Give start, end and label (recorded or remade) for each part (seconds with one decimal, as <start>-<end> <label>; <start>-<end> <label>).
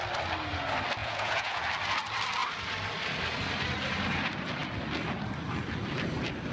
0.0-1.0 recorded; 1.0-1.6 remade; 1.6-6.5 recorded